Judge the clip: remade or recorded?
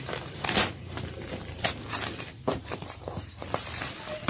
remade